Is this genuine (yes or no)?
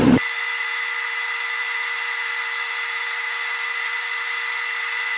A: no